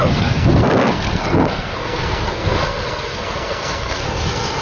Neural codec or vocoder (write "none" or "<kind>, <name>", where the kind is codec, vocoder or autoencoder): codec, SNAC